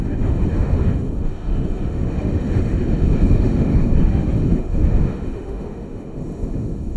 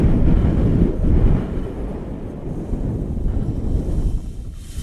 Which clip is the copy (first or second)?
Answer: first